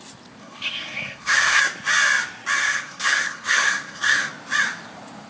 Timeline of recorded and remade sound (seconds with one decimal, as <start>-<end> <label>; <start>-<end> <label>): 0.0-0.4 recorded; 0.4-1.6 remade; 1.6-2.6 recorded; 2.6-4.3 remade; 4.3-5.3 recorded